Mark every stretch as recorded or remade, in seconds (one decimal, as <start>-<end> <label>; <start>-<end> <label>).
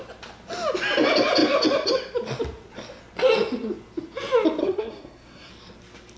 0.0-4.6 recorded; 4.6-5.5 remade; 5.5-6.2 recorded